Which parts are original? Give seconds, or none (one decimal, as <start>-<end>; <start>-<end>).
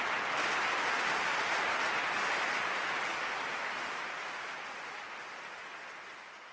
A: 0.0-6.5